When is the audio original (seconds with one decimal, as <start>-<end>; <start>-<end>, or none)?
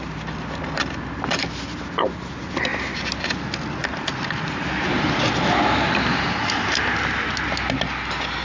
0.0-8.4